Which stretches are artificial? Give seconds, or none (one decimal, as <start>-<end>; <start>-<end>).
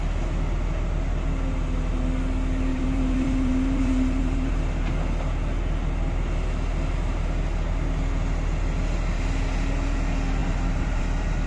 2.7-4.6; 10.4-11.0